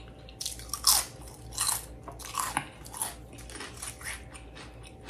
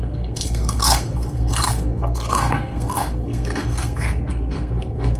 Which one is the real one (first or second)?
first